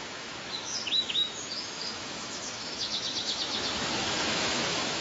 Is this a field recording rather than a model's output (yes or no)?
no